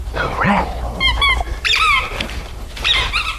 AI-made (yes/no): yes